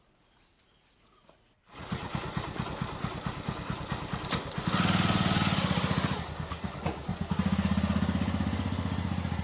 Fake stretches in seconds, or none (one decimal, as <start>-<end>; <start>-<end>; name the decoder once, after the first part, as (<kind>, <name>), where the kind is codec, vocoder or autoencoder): 0.0-2.1 (vocoder, Vocos); 6.5-7.1